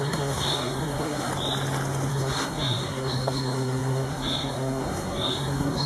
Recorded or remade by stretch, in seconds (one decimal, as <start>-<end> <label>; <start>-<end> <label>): 0.0-1.3 remade; 1.3-2.1 recorded; 2.1-5.9 remade